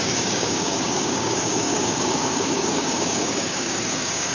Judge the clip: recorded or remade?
remade